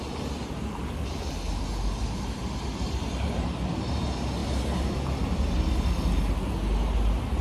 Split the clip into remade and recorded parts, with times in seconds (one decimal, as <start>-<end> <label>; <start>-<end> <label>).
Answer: 0.0-7.4 recorded